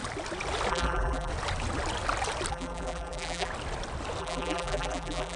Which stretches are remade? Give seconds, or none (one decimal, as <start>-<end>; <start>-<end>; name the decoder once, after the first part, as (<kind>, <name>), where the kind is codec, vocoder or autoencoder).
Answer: 0.7-1.3 (vocoder, BigVGAN v2); 2.5-3.5; 4.2-5.4